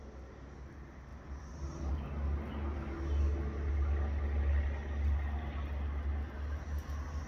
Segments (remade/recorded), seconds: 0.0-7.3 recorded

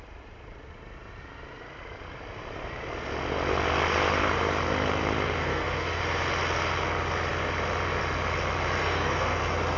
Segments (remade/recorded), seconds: 0.0-5.4 recorded; 5.4-6.0 remade; 6.0-8.8 recorded; 8.8-9.4 remade; 9.4-9.8 recorded

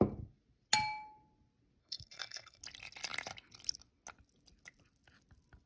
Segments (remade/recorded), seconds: 0.0-1.8 recorded; 1.8-2.6 remade; 2.6-5.7 recorded

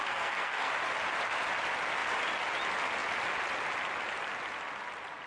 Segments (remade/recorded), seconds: 0.0-0.7 remade; 0.7-5.3 recorded

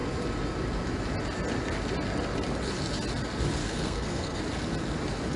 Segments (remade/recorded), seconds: 0.0-3.6 recorded; 3.6-4.4 remade; 4.4-5.4 recorded

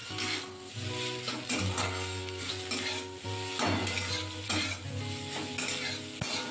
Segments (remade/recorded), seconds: 0.0-0.7 remade; 0.7-1.8 recorded; 1.8-2.5 remade; 2.5-6.5 recorded

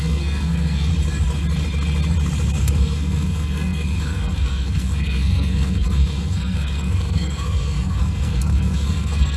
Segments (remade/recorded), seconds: 0.0-0.9 remade; 0.9-2.6 recorded; 2.6-9.4 remade